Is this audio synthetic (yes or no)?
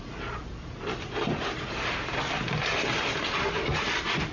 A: no